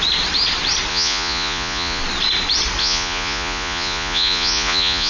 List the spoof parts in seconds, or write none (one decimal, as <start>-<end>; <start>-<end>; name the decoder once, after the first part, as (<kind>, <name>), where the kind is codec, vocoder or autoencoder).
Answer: 0.9-2.0 (vocoder, Vocos); 2.8-5.1